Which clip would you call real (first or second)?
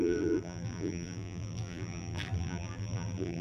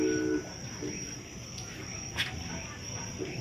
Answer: second